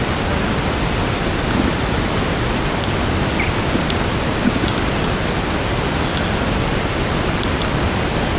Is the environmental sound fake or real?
real